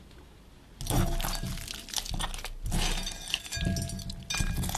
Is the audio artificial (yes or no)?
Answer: no